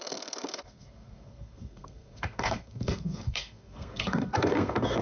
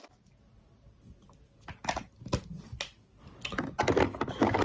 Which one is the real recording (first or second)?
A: second